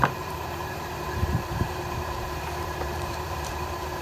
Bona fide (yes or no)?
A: no